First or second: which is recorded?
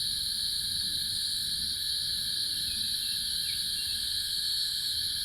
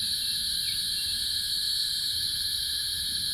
first